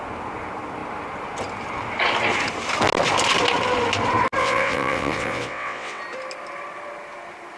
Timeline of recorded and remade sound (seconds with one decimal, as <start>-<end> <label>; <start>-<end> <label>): 0.0-4.4 recorded; 4.4-6.0 remade; 6.0-7.6 recorded